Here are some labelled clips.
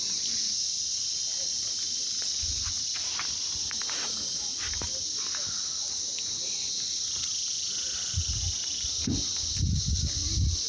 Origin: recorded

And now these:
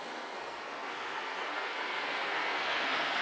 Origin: remade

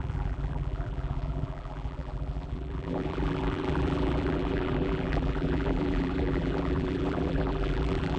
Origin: remade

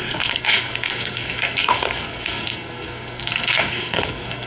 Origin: remade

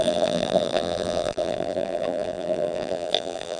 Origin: remade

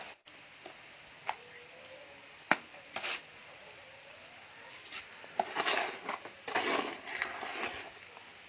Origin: recorded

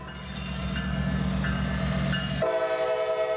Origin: recorded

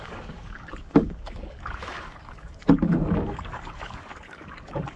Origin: remade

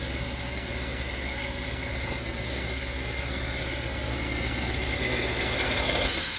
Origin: remade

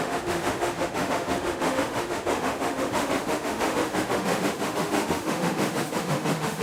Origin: remade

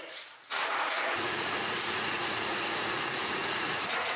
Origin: remade